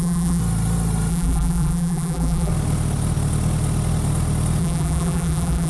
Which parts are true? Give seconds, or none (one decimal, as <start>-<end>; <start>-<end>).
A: 0.4-1.1; 2.5-4.6